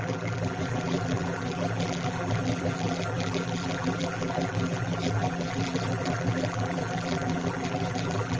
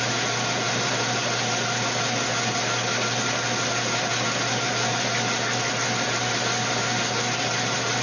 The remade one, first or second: first